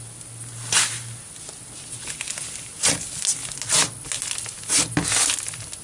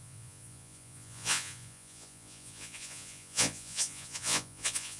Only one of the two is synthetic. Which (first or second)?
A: second